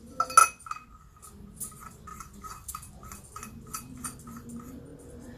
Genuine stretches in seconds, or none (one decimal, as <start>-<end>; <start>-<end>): 0.0-2.1; 2.7-5.4